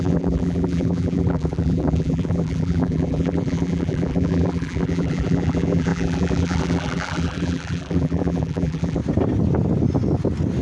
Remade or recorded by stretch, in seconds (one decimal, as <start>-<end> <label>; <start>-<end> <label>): 0.0-9.0 remade; 9.0-10.6 recorded